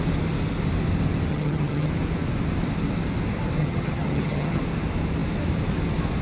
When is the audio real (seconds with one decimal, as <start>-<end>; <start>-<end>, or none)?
0.0-1.3; 1.9-3.6; 4.6-6.2